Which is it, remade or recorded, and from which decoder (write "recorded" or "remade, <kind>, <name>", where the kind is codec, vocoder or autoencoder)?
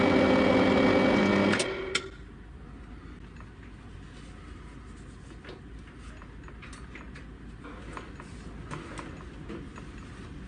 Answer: recorded